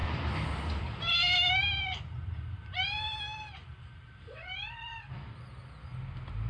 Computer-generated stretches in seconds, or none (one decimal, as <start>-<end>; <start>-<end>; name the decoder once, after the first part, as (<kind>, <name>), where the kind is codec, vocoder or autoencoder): 1.8-4.9 (vocoder, BigVGAN v2)